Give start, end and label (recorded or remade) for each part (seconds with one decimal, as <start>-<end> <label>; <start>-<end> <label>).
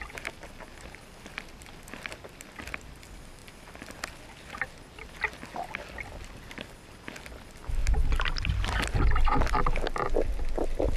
0.0-11.0 recorded